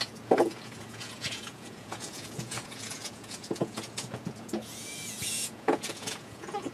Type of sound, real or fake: fake